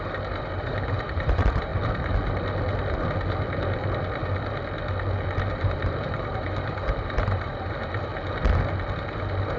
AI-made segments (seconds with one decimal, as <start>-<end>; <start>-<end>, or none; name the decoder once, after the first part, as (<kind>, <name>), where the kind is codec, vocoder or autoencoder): 0.0-1.7 (vocoder, BigVGAN v2); 5.5-8.1; 8.9-9.6